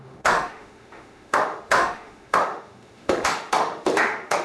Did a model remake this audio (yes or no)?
yes